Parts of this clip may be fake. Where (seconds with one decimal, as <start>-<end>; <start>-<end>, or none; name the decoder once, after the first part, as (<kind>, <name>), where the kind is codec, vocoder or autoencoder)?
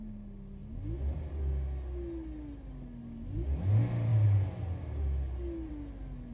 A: none